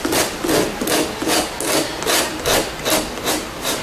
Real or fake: real